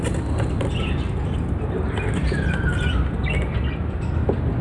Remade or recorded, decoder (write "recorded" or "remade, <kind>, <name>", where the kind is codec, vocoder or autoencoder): recorded